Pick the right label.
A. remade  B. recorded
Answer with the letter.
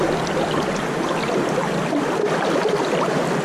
B